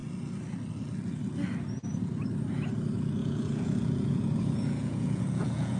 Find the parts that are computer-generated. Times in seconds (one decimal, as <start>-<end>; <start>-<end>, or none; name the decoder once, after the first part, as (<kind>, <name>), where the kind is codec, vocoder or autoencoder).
3.2-5.8 (vocoder, Vocos)

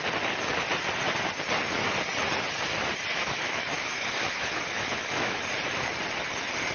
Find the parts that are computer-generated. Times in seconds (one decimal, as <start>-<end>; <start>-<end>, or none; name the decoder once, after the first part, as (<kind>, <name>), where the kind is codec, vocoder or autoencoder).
3.1-5.4 (autoencoder, DAC-VAE)

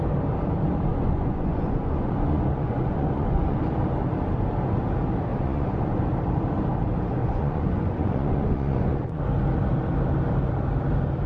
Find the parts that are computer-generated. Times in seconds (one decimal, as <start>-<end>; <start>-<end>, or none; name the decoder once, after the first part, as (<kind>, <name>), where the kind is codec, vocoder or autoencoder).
0.9-3.6 (vocoder, Vocos); 5.3-6.0; 7.2-9.2